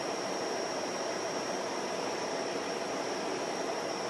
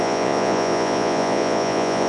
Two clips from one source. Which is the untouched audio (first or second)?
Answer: first